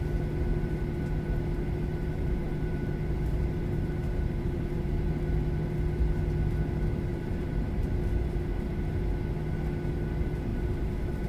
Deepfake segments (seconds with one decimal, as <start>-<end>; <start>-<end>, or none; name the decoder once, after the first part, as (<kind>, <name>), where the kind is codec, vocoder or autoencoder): 1.9-4.9 (vocoder, BigVGAN v2); 7.1-8.0; 10.5-11.3